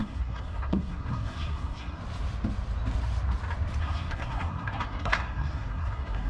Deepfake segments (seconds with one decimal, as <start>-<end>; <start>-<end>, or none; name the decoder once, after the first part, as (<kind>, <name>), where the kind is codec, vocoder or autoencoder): 0.0-2.0 (codec, SNAC); 3.8-6.3